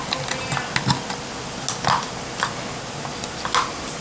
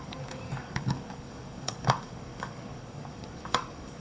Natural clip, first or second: first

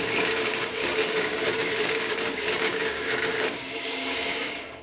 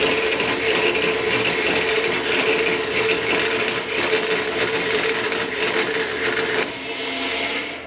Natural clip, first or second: second